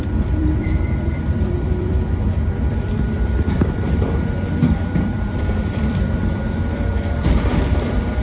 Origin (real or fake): fake